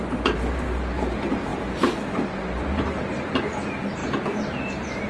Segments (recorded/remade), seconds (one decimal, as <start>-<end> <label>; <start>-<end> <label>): 0.0-5.1 remade